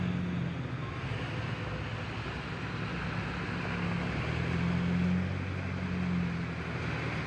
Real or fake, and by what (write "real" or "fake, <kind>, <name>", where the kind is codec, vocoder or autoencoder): real